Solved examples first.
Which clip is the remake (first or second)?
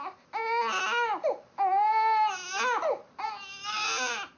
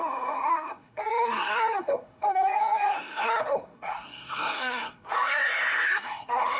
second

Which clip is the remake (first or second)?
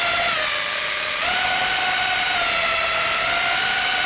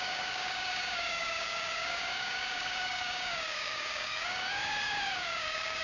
second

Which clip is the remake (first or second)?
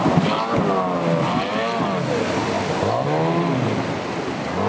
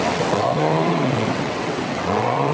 second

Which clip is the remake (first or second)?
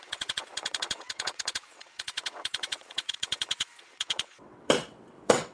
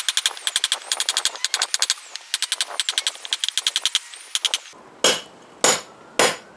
first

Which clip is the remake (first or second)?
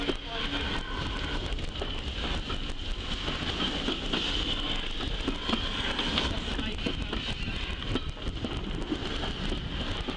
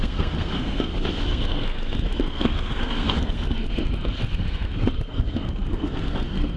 second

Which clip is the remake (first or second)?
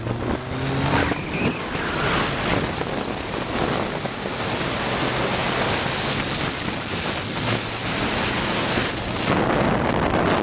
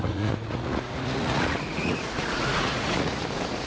second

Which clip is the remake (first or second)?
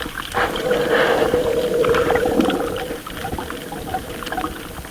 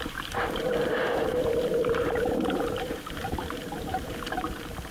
second